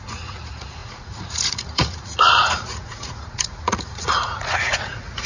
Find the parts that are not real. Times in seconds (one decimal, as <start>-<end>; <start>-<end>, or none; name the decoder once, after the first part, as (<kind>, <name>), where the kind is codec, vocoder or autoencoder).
0.0-5.3 (vocoder, Vocos)